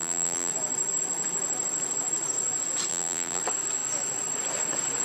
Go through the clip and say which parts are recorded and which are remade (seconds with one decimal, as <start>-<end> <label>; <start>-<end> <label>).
0.0-0.5 remade; 0.5-2.9 recorded; 2.9-3.4 remade; 3.4-5.0 recorded